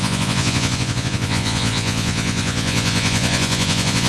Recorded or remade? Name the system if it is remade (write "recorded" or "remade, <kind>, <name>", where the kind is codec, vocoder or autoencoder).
remade, vocoder, Vocos